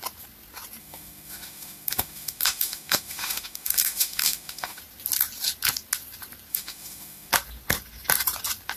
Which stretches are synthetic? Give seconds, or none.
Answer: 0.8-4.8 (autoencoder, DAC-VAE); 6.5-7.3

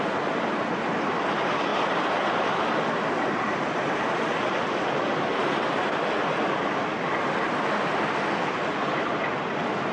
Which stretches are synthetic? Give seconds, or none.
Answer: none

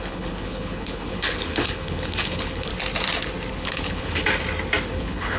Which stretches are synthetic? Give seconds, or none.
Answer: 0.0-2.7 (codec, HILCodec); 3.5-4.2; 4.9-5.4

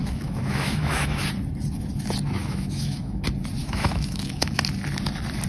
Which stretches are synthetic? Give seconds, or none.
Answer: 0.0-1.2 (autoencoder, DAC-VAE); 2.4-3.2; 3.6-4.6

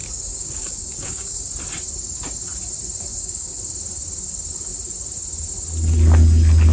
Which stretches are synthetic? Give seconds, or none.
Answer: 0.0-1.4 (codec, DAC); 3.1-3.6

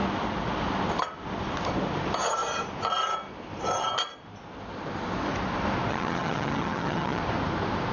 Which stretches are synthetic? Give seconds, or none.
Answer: 5.9-7.2 (vocoder, HiFi-GAN)